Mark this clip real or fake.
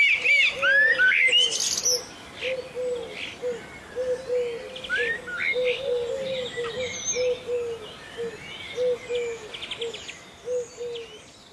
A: real